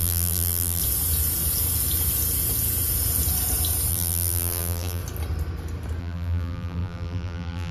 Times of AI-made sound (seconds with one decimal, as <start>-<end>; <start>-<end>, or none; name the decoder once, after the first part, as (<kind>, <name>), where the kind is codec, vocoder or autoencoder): 0.0-0.8 (vocoder, BigVGAN v2); 3.9-5.0; 6.0-7.7